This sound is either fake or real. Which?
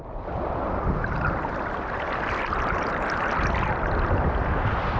real